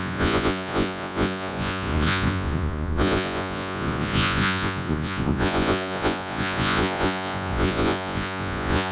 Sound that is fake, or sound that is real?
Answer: fake